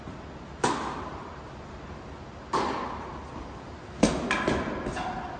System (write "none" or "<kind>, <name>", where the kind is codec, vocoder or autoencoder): none